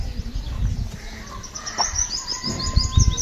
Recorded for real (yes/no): yes